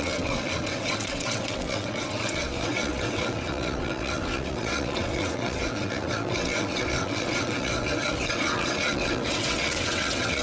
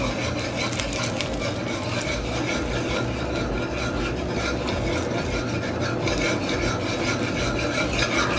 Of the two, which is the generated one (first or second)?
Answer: first